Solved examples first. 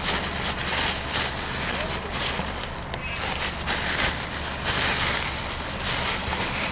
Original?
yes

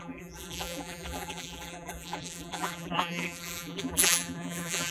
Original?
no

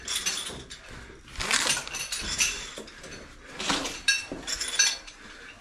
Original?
yes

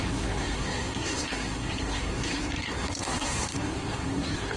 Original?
no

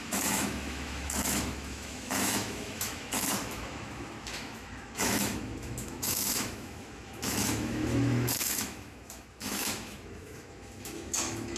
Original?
no